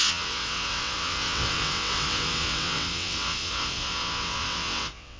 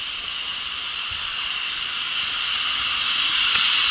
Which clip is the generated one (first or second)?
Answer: first